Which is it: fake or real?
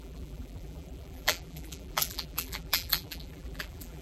fake